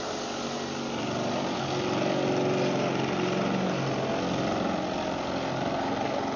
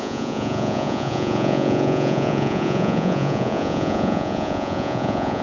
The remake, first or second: second